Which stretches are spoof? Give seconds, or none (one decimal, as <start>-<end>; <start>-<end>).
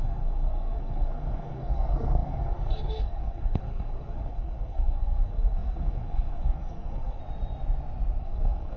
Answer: 0.0-7.2; 8.2-8.8